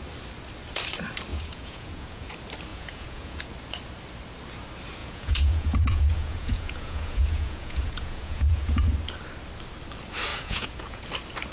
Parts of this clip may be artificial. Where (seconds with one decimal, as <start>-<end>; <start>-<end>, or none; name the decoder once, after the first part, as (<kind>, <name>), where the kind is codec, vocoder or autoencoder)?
1.3-2.3 (vocoder, Vocos); 2.7-3.4; 5.0-8.9; 10.3-11.0